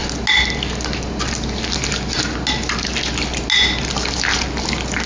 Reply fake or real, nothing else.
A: real